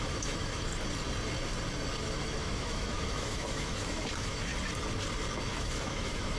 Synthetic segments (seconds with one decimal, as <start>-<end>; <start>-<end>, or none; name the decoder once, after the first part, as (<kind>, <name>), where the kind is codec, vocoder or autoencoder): 0.0-0.7 (autoencoder, DAC-VAE); 2.0-4.5; 5.5-6.4